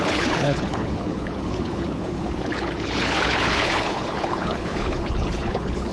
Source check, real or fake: fake